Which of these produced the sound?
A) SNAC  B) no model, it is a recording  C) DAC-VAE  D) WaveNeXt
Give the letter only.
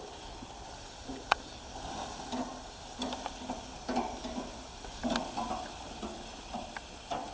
B